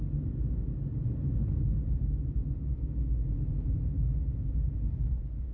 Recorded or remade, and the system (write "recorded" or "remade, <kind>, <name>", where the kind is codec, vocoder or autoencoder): recorded